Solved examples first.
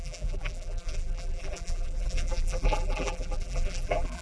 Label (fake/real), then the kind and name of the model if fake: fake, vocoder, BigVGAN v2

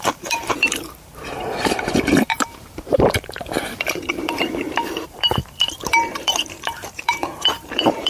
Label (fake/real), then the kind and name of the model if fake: fake, vocoder, BigVGAN v2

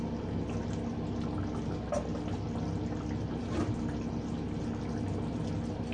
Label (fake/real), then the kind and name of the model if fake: real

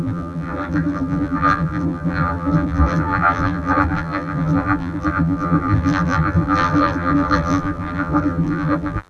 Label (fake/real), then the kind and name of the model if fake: fake, vocoder, BigVGAN v2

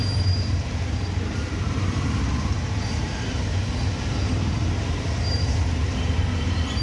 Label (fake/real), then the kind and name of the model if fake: fake, vocoder, BigVGAN v2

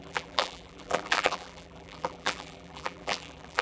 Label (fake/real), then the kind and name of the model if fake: fake, vocoder, BigVGAN v2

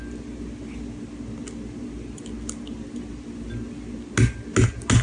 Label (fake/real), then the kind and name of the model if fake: real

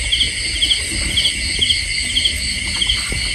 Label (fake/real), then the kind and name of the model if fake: real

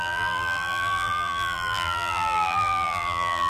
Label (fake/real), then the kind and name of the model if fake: fake, vocoder, BigVGAN v2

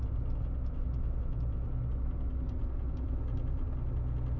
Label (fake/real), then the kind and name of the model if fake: real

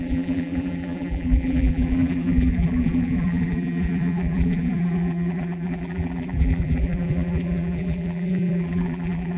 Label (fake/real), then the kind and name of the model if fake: fake, vocoder, BigVGAN v2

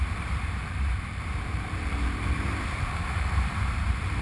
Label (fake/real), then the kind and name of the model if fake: fake, vocoder, BigVGAN v2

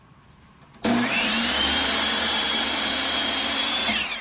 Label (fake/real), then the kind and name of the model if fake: fake, vocoder, BigVGAN v2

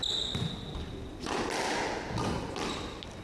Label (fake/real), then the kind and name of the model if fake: fake, vocoder, BigVGAN v2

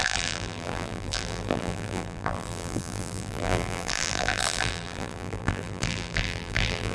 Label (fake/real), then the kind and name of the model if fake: fake, vocoder, BigVGAN v2